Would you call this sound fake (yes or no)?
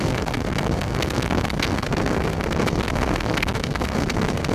yes